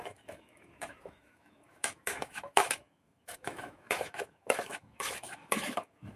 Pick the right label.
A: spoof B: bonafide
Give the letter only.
A